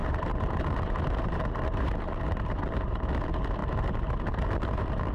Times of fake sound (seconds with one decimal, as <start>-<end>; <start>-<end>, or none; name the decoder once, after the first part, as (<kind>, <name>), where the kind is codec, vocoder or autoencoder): 0.0-3.1 (vocoder, BigVGAN v2); 3.6-5.1